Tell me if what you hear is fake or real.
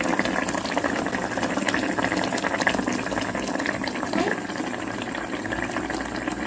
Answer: real